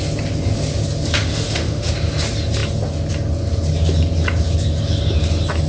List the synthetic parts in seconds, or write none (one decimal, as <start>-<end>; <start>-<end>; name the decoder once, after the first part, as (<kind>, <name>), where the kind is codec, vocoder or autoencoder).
1.2-1.9 (autoencoder, DAC-VAE)